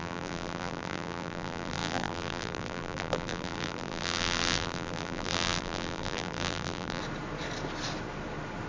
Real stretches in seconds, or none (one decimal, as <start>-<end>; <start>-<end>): 7.0-8.7